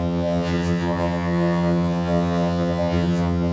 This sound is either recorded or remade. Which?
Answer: remade